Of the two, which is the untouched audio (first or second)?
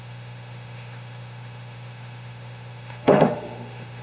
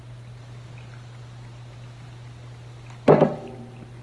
second